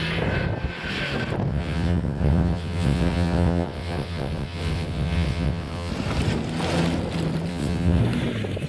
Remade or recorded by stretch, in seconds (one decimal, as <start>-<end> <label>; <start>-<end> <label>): 0.0-1.5 recorded; 1.5-5.9 remade; 5.9-7.5 recorded; 7.5-8.0 remade; 8.0-8.7 recorded